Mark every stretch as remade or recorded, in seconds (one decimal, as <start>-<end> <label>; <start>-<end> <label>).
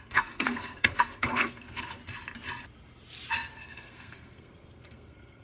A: 0.0-2.0 remade; 2.0-3.5 recorded; 3.5-5.4 remade